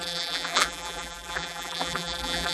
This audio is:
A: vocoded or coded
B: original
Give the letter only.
A